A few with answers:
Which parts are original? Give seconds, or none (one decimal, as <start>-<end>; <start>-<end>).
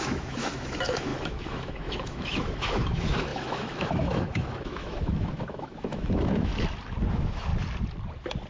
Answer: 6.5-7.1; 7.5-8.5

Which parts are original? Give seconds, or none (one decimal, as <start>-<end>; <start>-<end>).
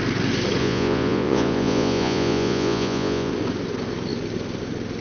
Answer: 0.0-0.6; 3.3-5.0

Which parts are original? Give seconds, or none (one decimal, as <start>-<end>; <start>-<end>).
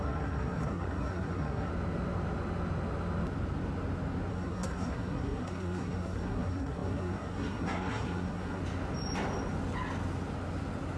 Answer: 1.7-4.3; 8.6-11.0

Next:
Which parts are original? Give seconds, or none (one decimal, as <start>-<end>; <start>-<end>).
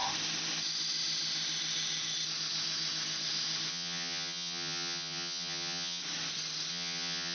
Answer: 0.0-3.7; 6.0-6.7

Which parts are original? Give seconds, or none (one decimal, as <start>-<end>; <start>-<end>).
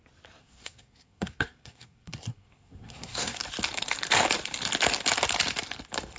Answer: 0.0-0.4; 3.4-6.2